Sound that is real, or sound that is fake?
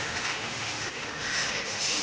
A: fake